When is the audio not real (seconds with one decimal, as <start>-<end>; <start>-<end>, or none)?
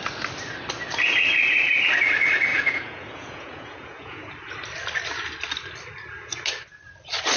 2.5-4.3